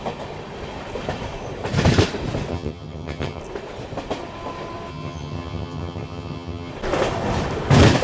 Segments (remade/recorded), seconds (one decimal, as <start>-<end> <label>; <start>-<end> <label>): 0.0-2.5 recorded; 2.5-3.4 remade; 3.4-4.9 recorded; 4.9-6.7 remade; 6.7-8.0 recorded